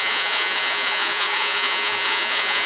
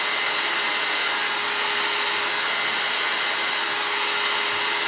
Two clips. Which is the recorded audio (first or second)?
second